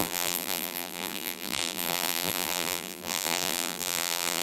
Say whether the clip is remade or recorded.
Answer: remade